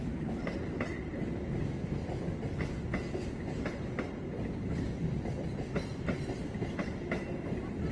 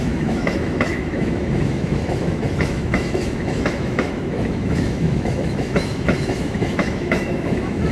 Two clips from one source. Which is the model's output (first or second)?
second